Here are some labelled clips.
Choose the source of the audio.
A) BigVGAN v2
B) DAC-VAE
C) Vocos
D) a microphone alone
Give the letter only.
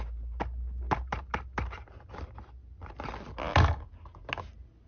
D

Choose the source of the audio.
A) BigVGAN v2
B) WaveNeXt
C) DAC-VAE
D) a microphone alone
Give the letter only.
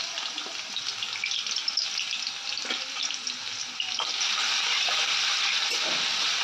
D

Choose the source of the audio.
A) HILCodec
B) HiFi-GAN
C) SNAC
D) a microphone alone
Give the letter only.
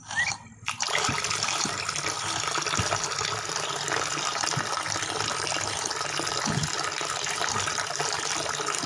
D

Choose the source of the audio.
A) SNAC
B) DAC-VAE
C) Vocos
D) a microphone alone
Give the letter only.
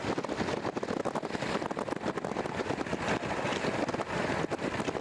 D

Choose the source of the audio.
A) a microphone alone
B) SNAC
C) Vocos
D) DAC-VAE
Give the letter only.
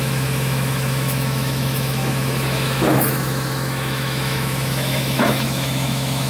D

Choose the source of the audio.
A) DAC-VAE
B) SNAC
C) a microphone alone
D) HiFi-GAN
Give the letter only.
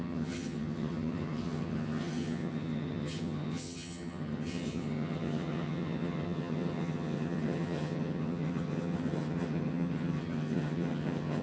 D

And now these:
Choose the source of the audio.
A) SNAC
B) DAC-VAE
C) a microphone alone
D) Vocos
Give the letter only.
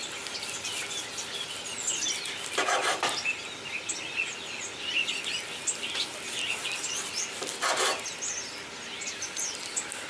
C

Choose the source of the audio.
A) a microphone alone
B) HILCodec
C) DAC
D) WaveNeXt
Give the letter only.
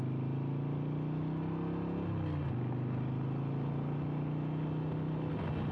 A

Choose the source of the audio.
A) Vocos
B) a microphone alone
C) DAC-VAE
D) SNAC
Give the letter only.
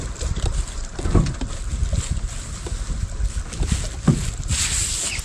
B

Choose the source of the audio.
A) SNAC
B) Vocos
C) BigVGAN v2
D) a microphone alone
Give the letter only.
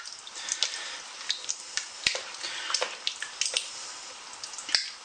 D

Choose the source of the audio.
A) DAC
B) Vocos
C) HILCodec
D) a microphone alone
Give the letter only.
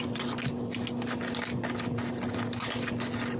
D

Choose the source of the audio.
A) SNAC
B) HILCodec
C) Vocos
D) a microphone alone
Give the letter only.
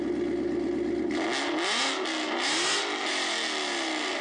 D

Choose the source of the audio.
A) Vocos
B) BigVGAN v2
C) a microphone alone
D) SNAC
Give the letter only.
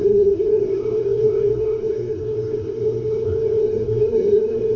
D